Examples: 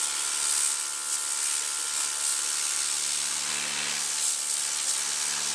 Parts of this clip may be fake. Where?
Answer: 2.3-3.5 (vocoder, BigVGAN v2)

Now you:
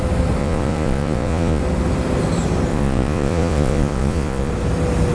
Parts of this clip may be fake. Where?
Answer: 0.4-1.6 (vocoder, Vocos); 2.7-4.5

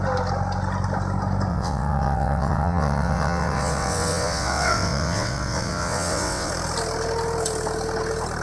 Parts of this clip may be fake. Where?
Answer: 1.5-6.5 (vocoder, WaveNeXt)

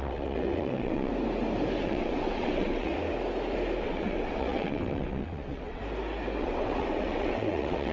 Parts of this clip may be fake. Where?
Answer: 0.0-1.1 (vocoder, WaveNeXt); 1.8-2.9; 3.8-5.8; 6.4-7.9

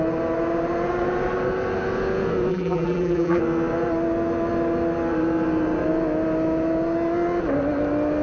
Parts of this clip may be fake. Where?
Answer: 2.5-3.4 (vocoder, BigVGAN v2)